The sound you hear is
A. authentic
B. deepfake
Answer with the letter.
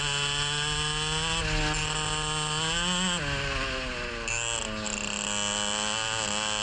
A